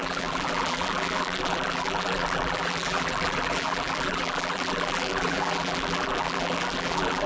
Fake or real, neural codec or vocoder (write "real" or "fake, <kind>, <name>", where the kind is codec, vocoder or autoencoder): fake, vocoder, BigVGAN v2